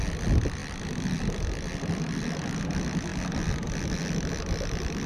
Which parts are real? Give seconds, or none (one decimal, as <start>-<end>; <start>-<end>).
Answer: 0.0-0.6; 2.6-5.1